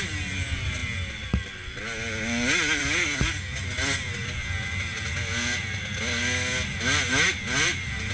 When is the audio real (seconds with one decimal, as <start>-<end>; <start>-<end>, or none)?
0.0-8.1